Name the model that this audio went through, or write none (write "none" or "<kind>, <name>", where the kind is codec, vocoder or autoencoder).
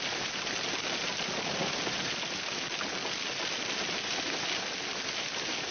none